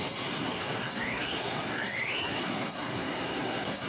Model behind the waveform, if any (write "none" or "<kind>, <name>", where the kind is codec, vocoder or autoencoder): codec, SNAC